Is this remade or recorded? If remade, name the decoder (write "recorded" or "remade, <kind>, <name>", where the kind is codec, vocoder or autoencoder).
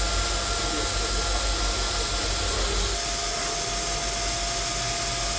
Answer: recorded